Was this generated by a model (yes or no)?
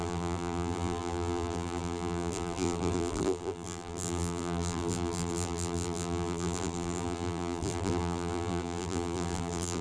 yes